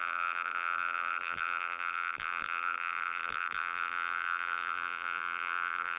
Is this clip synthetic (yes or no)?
yes